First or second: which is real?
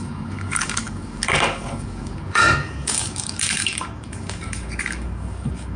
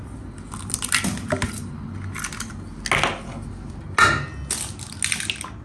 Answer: second